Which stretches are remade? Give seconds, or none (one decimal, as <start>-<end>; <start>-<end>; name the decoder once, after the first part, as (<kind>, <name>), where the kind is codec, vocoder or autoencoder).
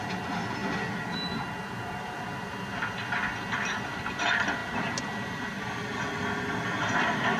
none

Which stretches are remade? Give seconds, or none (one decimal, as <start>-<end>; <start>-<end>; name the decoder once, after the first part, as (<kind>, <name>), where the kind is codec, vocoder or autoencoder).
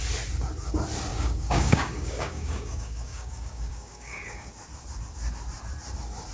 1.1-4.5 (codec, DAC)